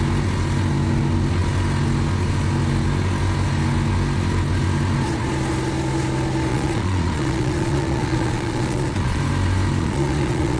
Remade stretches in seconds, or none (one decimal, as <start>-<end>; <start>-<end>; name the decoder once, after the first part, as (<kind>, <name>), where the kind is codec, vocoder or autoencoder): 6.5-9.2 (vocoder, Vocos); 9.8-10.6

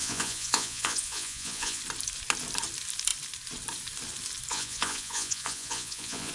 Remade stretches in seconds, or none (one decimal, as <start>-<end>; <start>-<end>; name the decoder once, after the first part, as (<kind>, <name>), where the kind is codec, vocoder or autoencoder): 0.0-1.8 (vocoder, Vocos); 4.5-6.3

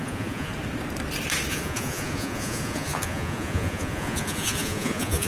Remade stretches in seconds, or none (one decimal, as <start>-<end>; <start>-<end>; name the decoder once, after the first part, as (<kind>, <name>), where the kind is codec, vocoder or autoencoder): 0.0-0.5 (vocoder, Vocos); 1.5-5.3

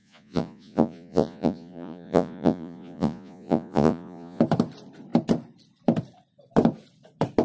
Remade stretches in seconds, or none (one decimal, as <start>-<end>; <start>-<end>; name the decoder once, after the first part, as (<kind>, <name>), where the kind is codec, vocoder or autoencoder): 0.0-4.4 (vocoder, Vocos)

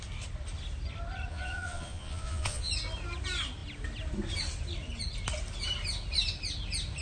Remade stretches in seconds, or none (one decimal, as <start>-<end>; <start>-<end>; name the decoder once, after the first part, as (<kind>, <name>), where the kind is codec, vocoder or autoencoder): 1.3-2.7 (vocoder, Vocos)

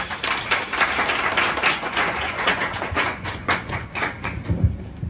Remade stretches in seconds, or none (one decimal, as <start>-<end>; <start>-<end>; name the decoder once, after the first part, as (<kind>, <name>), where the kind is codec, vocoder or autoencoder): 1.7-4.4 (vocoder, Vocos)